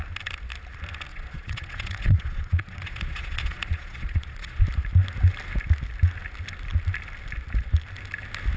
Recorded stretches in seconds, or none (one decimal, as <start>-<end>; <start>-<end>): 0.0-1.1; 4.6-8.6